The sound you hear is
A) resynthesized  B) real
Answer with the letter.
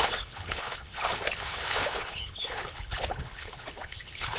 A